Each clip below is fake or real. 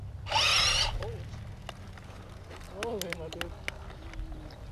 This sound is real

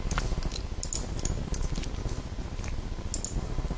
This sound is real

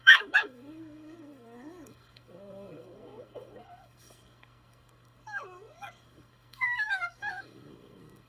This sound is fake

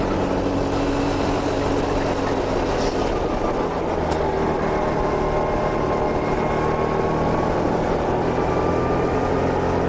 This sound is real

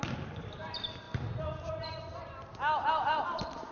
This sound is fake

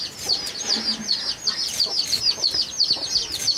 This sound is real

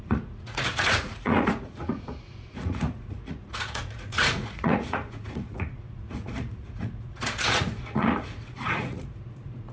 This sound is fake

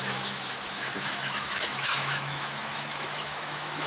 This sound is fake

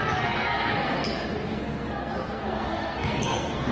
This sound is fake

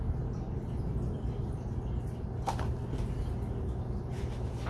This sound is real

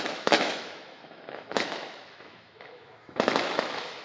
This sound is fake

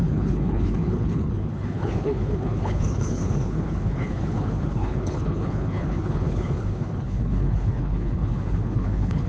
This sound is fake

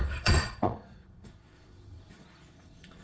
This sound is fake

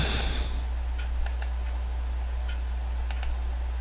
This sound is real